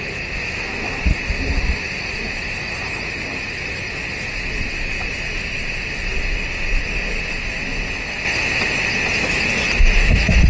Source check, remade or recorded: recorded